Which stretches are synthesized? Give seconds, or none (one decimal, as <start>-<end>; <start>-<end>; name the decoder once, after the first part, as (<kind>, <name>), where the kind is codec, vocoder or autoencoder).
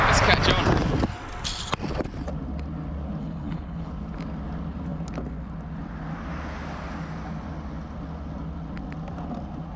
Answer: 3.2-3.9 (codec, HILCodec)